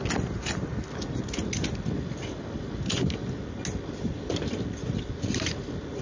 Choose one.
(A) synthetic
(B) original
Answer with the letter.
B